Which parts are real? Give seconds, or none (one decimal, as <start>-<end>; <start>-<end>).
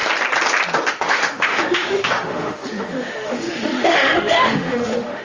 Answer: 0.0-0.9